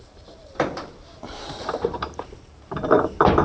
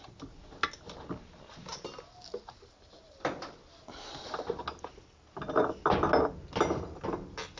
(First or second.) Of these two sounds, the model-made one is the first